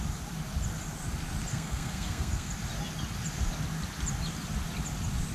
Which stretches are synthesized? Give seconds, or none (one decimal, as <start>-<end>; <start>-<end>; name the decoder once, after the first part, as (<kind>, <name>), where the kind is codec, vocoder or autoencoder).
1.5-2.5 (codec, SNAC)